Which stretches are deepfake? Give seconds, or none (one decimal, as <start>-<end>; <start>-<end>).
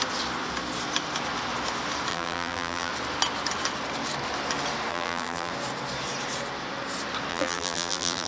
2.1-2.9; 4.9-5.5; 7.3-8.3